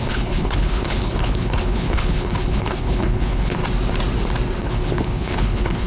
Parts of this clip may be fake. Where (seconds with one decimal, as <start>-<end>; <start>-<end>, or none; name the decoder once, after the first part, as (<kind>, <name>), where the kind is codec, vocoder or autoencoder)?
0.0-3.6 (codec, HILCodec); 4.6-5.9